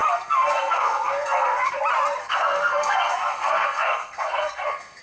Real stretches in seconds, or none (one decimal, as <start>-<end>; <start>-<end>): 1.8-2.2

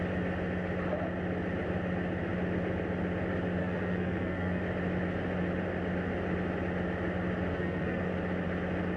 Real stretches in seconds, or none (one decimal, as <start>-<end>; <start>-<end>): 0.0-3.6; 4.6-7.5; 8.0-9.0

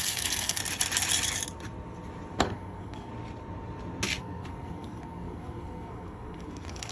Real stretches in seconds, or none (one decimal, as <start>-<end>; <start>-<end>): 0.6-2.4; 3.1-4.2

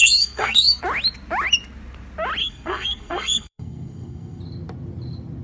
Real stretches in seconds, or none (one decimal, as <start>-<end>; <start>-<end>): 0.8-2.4; 4.4-5.4

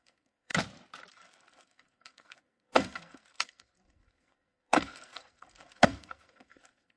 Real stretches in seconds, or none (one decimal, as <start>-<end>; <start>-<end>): 0.5-1.1